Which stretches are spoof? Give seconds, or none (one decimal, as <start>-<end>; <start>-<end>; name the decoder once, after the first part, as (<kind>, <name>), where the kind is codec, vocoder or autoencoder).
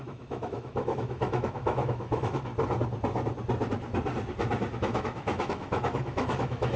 0.0-2.5 (autoencoder, DAC-VAE); 4.8-6.8